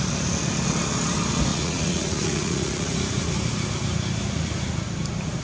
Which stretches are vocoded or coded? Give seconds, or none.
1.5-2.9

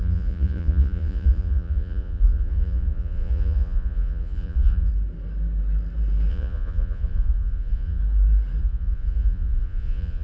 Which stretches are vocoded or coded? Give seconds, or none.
0.0-4.9; 6.3-8.0; 8.6-10.2

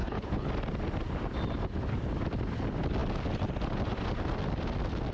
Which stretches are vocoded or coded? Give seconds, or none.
0.0-0.5